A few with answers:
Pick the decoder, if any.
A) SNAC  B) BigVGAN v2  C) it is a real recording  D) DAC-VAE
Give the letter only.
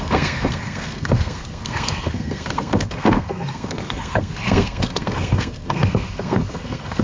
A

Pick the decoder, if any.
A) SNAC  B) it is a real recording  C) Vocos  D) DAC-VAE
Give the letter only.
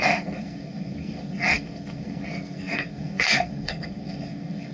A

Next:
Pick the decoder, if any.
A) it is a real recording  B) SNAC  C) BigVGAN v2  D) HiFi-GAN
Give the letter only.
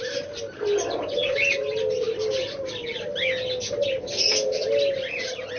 A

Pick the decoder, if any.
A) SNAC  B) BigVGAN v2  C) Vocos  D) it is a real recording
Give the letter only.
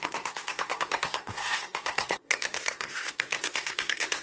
A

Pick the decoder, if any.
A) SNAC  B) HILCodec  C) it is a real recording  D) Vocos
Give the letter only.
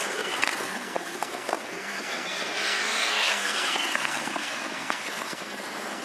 A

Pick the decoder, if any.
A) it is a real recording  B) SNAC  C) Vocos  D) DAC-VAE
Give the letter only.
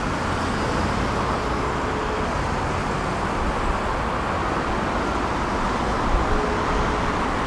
A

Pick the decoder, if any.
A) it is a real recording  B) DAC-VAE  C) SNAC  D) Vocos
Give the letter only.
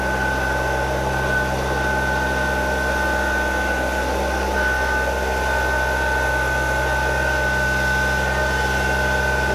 A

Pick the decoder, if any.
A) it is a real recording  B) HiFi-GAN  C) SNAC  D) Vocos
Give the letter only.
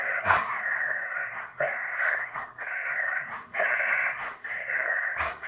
C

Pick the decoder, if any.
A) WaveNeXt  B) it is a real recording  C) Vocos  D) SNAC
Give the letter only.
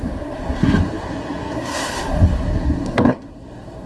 D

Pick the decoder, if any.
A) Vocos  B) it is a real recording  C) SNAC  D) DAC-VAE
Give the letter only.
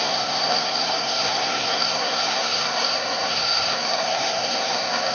C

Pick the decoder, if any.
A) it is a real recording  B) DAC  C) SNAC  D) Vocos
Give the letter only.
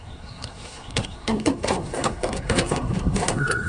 C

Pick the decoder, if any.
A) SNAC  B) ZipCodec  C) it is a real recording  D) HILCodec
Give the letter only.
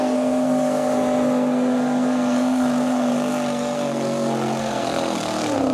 A